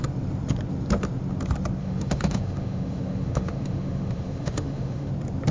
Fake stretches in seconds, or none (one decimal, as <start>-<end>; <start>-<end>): 1.8-5.1